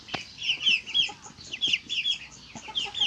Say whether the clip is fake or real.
real